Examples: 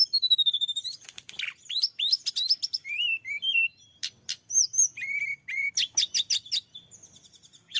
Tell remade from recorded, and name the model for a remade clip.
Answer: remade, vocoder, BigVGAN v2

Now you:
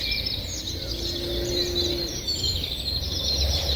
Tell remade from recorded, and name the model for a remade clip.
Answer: recorded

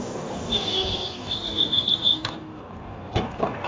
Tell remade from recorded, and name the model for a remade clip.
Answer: remade, codec, DAC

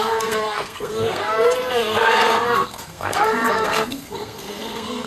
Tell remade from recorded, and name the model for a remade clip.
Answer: remade, codec, SNAC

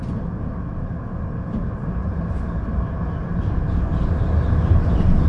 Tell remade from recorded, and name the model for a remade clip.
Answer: recorded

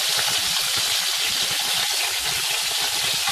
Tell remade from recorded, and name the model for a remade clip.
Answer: recorded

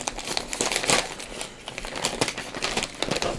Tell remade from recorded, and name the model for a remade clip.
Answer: recorded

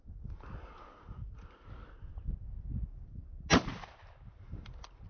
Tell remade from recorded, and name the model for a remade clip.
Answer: recorded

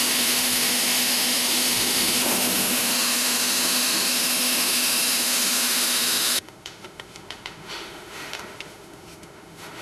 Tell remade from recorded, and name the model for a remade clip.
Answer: remade, autoencoder, DAC-VAE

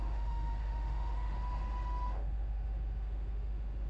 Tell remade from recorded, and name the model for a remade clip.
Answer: remade, autoencoder, DAC-VAE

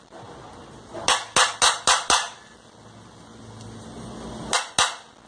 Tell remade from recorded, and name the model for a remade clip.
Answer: recorded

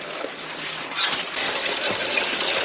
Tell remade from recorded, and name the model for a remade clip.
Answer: recorded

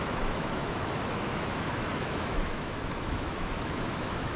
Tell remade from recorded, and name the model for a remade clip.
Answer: remade, autoencoder, DAC-VAE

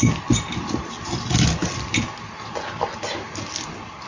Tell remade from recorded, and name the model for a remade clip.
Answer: recorded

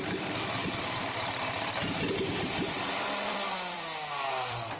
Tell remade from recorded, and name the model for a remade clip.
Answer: remade, vocoder, BigVGAN v2